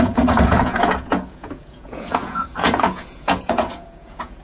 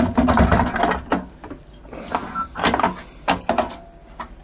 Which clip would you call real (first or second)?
second